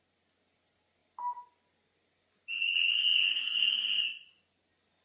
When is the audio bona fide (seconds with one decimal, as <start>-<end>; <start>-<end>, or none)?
0.0-5.0